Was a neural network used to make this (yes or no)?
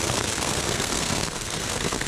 yes